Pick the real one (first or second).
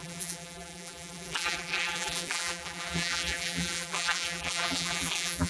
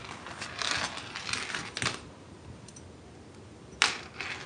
second